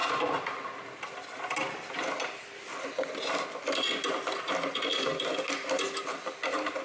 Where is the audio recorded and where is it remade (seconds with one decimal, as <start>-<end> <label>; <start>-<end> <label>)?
0.0-6.8 recorded